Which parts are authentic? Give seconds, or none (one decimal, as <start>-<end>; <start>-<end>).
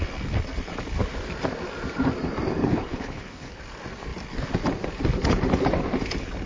0.0-2.6; 3.6-6.5